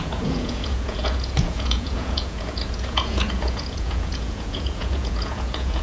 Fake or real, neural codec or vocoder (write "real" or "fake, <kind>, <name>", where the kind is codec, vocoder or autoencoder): fake, vocoder, Vocos